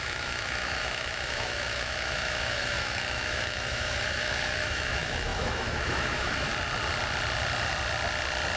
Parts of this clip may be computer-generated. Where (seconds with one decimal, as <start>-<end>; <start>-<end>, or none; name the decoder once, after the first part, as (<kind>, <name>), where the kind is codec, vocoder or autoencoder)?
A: 0.0-6.5 (autoencoder, DAC-VAE)